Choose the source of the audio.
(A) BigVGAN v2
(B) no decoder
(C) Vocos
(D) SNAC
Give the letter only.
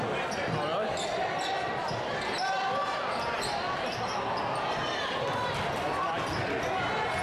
B